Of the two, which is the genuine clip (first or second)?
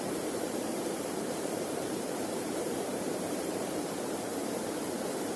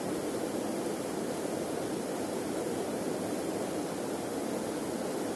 second